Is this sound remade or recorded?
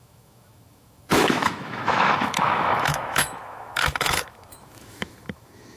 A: remade